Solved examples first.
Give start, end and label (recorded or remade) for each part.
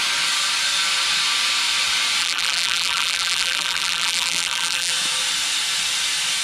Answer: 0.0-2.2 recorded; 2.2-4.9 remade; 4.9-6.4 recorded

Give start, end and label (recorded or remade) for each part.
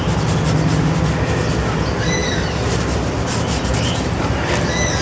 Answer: 0.0-2.2 recorded; 2.2-3.0 remade; 3.0-3.7 recorded; 3.7-4.3 remade; 4.3-5.0 recorded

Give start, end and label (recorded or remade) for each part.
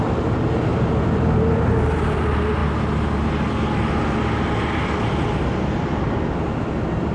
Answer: 0.0-0.7 recorded; 0.7-1.7 remade; 1.7-7.1 recorded